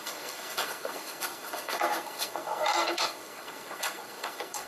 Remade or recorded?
remade